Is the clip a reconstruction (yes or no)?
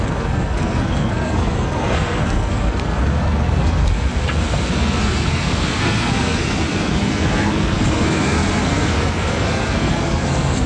yes